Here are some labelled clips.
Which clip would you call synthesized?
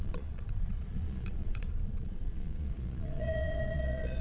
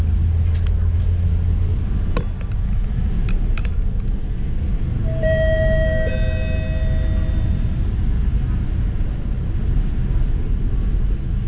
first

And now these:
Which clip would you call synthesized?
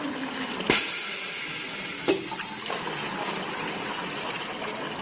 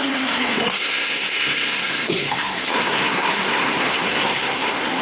second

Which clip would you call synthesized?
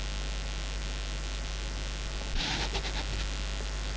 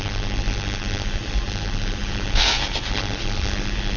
second